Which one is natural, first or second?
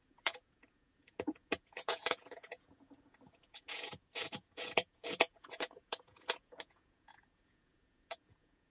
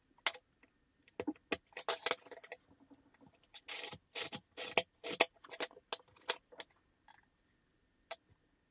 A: second